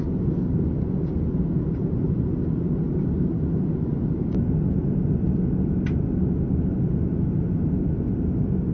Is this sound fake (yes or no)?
no